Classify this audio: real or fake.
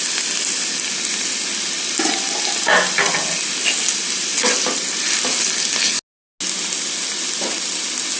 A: real